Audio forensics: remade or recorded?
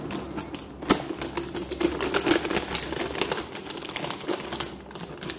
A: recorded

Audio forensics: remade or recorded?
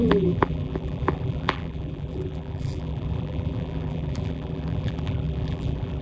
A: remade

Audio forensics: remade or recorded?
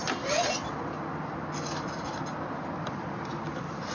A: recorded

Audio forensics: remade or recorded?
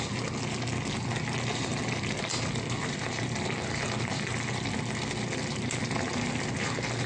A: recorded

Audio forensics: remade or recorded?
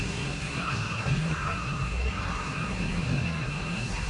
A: remade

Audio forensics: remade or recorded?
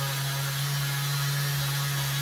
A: recorded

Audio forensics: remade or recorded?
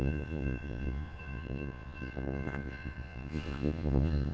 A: remade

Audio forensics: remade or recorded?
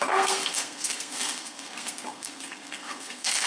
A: remade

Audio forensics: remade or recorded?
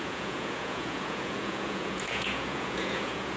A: remade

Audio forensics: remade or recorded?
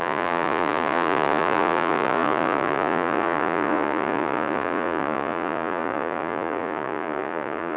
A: remade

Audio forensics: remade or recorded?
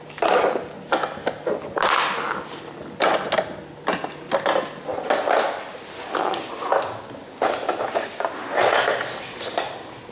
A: recorded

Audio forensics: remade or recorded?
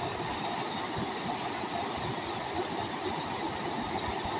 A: recorded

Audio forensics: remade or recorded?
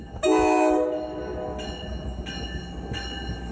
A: recorded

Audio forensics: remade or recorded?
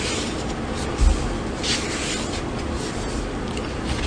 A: recorded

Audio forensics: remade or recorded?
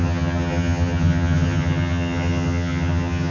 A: remade